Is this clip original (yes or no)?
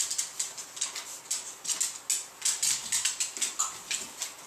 yes